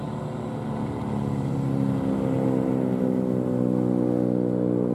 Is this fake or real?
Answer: real